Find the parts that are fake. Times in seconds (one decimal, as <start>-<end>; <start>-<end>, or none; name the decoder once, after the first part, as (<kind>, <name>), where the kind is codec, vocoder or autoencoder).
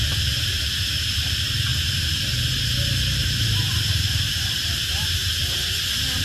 0.0-5.2 (vocoder, BigVGAN v2)